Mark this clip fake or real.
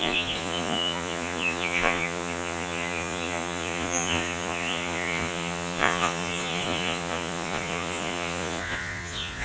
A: fake